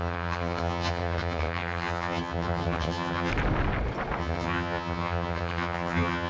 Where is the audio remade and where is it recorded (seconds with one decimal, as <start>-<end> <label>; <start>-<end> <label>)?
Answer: 0.0-3.3 remade; 3.3-4.2 recorded; 4.2-6.3 remade